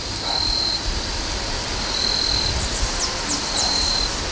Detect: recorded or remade recorded